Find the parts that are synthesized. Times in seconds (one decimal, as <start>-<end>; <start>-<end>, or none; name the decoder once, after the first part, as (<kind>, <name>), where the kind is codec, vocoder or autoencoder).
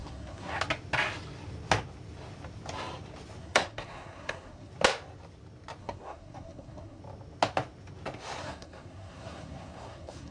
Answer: 0.0-0.6 (codec, SNAC); 3.4-4.7; 5.8-7.0; 8.4-10.3